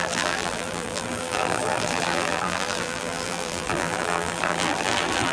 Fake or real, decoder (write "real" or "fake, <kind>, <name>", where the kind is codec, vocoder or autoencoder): fake, vocoder, BigVGAN v2